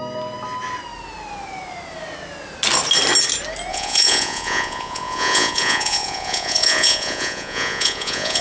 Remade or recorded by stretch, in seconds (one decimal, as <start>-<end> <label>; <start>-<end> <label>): 0.0-3.7 recorded; 3.7-8.4 remade